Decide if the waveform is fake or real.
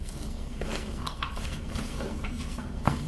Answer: fake